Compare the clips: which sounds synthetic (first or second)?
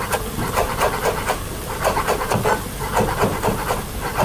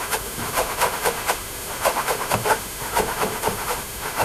second